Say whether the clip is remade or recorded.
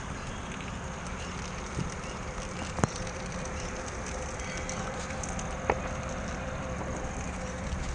remade